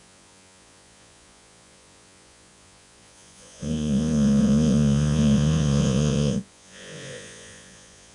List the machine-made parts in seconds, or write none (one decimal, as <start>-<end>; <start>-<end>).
0.0-8.1